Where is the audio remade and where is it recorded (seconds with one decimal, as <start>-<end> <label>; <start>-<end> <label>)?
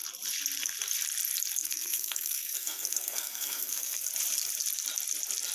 0.0-1.6 recorded; 1.6-4.1 remade; 4.1-5.5 recorded